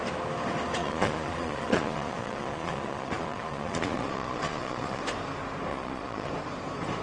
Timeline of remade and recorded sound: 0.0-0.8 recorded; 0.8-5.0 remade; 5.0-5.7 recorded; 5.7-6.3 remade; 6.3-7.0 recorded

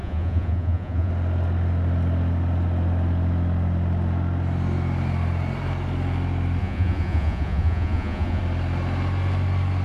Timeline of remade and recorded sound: 0.0-1.1 remade; 1.1-6.6 recorded; 6.6-8.4 remade; 8.4-9.8 recorded

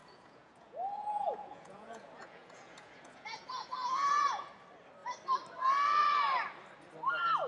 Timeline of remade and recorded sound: 0.0-4.5 remade; 4.5-7.5 recorded

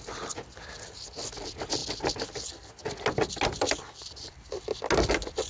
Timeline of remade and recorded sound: 0.0-5.5 recorded

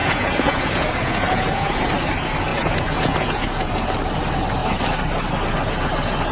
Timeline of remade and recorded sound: 0.0-1.8 remade; 1.8-2.5 recorded; 2.5-3.8 remade; 3.8-6.3 recorded

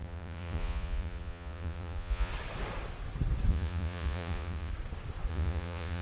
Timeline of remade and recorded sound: 0.0-2.3 remade; 2.3-3.5 recorded; 3.5-4.7 remade; 4.7-5.3 recorded; 5.3-6.0 remade